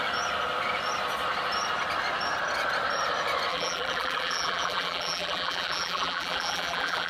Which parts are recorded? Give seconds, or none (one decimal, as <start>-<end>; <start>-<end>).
0.0-3.5